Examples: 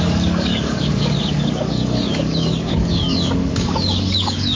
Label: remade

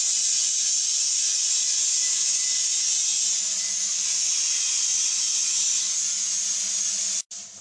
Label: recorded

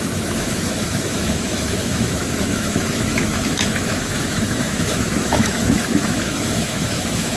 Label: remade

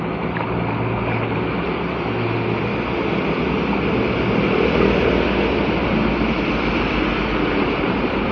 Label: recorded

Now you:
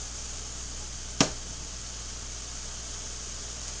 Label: recorded